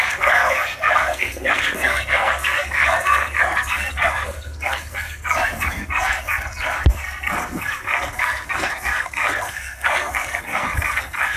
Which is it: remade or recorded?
remade